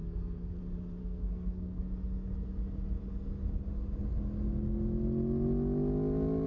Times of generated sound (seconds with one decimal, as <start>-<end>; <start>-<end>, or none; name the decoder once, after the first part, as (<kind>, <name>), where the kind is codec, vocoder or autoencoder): 0.0-0.6 (codec, SNAC); 1.0-1.8